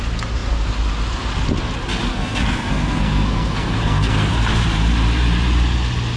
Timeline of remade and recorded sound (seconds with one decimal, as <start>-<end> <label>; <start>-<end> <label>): 0.0-2.1 recorded; 2.1-4.3 remade; 4.3-6.2 recorded